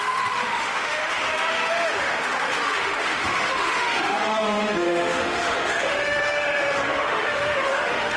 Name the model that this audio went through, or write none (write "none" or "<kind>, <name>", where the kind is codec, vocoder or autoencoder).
autoencoder, DAC-VAE